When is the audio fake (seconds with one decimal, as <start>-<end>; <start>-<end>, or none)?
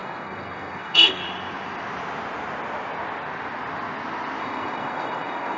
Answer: 0.0-1.2; 4.4-5.6